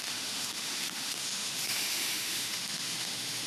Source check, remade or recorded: remade